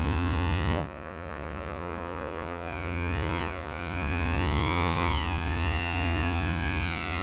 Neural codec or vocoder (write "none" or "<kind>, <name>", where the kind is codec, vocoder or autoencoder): vocoder, Vocos